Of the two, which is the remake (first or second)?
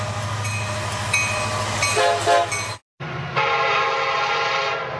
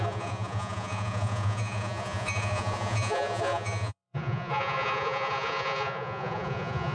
second